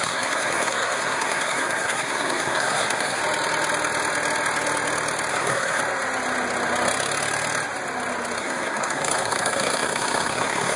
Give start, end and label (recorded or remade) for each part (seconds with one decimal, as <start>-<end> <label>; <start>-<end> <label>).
0.0-3.2 remade; 3.2-5.3 recorded; 5.3-5.8 remade; 5.8-8.4 recorded; 8.4-10.8 remade